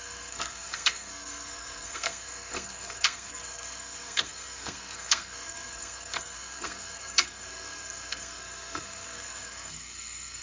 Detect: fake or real fake